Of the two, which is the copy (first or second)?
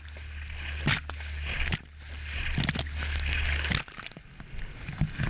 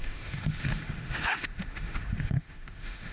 second